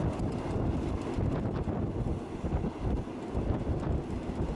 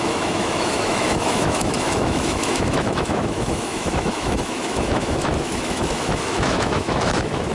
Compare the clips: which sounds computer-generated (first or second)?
second